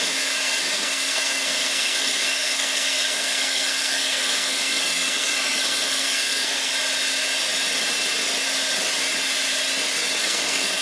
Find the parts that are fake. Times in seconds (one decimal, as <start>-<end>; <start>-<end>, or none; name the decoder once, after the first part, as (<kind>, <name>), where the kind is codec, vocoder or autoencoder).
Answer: 0.0-6.7 (codec, SNAC); 10.2-10.8